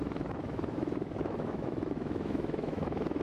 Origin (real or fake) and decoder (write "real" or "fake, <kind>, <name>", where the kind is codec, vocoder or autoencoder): fake, autoencoder, DAC-VAE